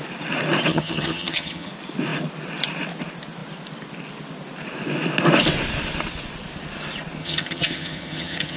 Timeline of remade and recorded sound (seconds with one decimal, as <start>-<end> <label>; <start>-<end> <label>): 0.0-0.7 recorded; 0.7-1.7 remade; 1.7-7.2 recorded; 7.2-8.6 remade